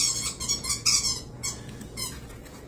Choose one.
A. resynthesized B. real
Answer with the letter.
A